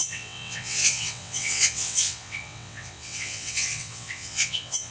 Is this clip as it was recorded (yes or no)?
no